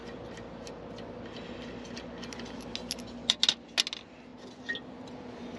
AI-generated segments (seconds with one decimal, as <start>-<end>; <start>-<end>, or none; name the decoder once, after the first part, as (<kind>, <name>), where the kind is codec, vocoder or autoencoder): none